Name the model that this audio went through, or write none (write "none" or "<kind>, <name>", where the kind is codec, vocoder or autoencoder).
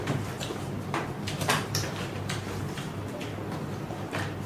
vocoder, BigVGAN v2